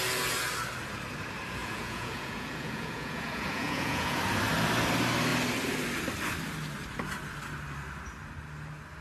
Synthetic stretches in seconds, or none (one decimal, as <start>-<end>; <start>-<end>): 1.6-4.2